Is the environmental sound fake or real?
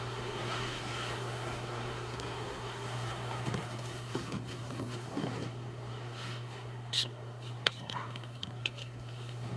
fake